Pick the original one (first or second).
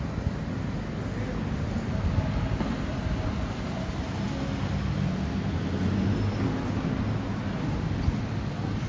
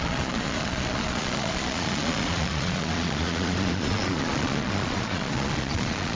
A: first